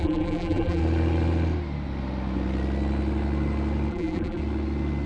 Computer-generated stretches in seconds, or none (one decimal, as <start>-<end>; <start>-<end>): 0.0-0.8; 3.9-4.4